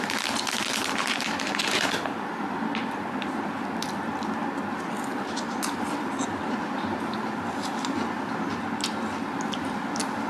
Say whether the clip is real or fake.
real